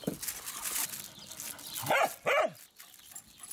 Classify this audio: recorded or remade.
recorded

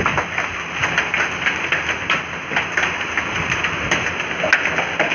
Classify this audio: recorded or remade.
recorded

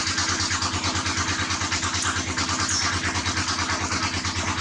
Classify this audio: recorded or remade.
recorded